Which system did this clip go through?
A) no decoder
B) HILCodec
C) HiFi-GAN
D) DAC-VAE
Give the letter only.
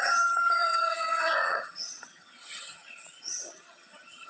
C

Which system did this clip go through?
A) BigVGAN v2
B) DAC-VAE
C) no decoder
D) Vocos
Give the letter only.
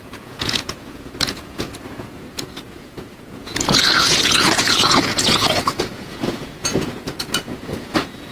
D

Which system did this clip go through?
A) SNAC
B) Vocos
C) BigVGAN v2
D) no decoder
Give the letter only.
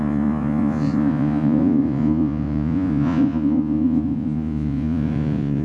B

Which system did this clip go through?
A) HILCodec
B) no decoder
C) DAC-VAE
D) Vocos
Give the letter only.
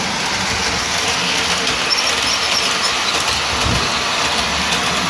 B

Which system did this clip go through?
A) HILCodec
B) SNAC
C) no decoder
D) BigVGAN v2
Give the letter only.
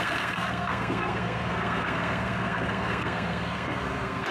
B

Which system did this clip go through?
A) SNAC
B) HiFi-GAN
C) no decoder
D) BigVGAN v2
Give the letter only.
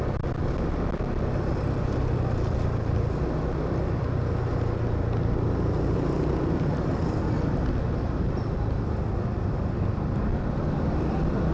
C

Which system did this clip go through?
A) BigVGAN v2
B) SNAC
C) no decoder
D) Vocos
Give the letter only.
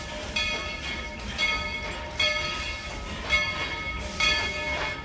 C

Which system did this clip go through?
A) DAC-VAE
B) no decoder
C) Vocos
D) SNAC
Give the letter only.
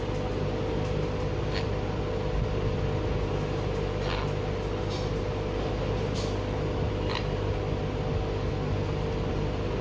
B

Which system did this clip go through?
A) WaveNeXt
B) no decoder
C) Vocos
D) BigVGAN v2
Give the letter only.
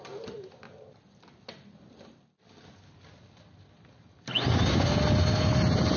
B